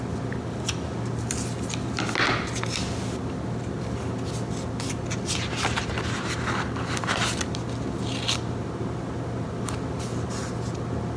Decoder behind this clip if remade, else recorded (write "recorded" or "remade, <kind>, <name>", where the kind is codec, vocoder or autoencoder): recorded